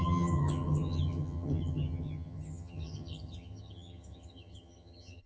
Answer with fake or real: fake